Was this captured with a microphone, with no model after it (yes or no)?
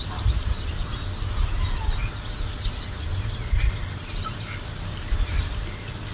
yes